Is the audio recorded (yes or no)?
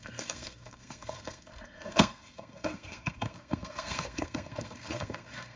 no